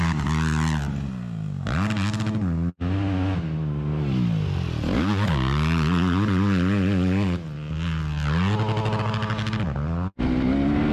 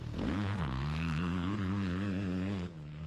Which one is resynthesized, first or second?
second